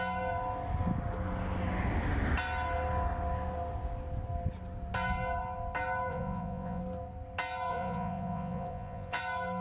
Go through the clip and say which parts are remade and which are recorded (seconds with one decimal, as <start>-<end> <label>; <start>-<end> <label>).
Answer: 0.0-6.1 recorded; 6.1-6.8 remade; 6.8-7.7 recorded; 7.7-9.2 remade; 9.2-9.6 recorded